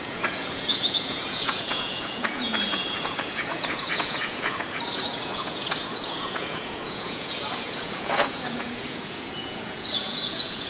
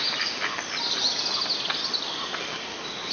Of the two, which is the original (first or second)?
second